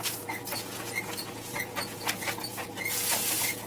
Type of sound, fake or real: fake